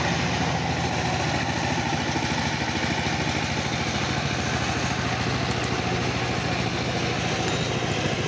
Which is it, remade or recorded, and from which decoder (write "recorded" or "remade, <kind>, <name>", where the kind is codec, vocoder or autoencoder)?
recorded